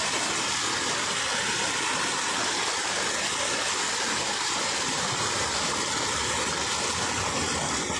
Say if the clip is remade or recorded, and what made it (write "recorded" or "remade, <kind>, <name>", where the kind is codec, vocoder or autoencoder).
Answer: recorded